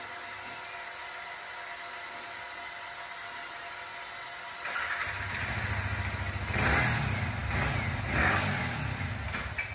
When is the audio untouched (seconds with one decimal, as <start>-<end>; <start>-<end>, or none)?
0.0-9.7